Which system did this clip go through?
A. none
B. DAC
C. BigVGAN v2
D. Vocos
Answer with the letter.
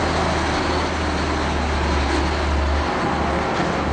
A